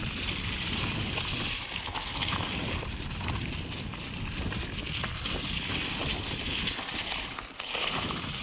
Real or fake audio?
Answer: real